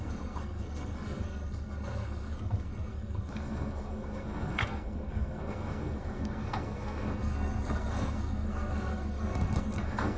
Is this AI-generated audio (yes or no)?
yes